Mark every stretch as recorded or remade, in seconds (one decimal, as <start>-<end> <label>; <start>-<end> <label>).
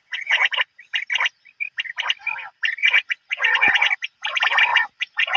0.0-0.6 remade; 0.6-2.8 recorded; 2.8-3.9 remade; 3.9-4.7 recorded; 4.7-5.4 remade